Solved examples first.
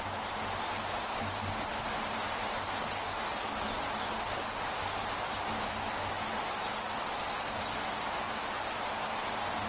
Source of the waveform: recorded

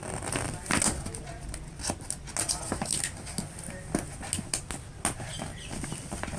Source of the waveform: recorded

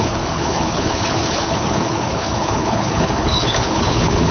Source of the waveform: remade